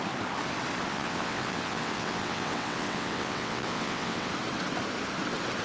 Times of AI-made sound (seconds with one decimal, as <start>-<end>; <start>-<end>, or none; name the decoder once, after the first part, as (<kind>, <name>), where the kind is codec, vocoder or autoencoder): 0.9-4.3 (vocoder, WaveNeXt)